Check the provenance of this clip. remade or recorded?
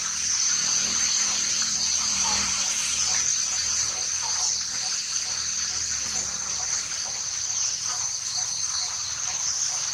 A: remade